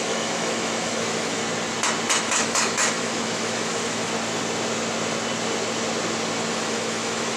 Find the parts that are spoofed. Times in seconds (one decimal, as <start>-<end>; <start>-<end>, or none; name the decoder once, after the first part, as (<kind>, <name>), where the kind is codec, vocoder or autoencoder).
0.0-1.4 (autoencoder, DAC-VAE); 2.2-4.1; 6.5-7.4